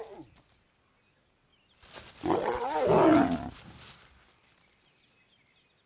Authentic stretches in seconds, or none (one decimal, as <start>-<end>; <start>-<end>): 0.0-5.9